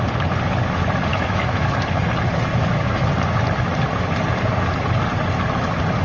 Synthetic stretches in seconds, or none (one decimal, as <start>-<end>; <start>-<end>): 1.1-1.8; 2.5-3.1